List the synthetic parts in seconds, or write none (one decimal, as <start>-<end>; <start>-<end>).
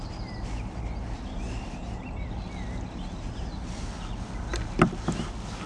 none